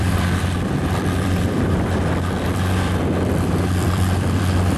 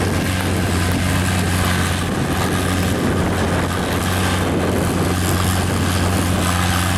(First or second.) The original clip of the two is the second